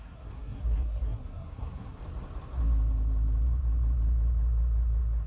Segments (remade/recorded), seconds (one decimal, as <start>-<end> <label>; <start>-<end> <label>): 0.0-2.0 remade; 2.0-5.3 recorded